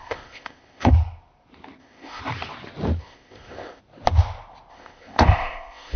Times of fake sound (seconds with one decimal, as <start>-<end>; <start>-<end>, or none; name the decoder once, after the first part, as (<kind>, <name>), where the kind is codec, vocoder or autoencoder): 0.0-0.9 (codec, ZipCodec); 1.8-2.2; 3.0-3.8; 4.7-6.0